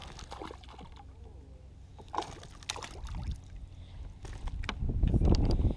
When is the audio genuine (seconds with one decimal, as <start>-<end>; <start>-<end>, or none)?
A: 0.0-5.8